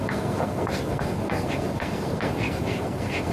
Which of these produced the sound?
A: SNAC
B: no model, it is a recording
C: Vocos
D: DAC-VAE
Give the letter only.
A